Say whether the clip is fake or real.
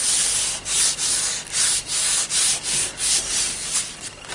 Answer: real